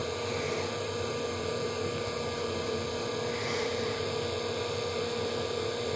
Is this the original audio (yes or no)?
yes